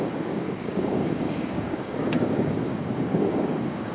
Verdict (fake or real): fake